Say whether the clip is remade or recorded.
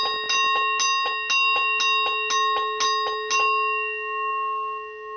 recorded